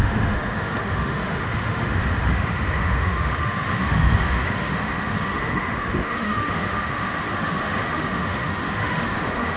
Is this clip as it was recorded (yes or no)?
no